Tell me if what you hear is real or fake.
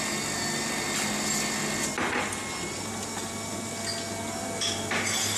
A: real